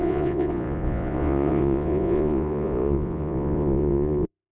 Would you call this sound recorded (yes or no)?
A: no